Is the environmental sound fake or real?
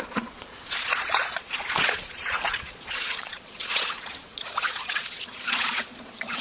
fake